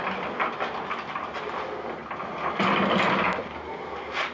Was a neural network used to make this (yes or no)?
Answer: no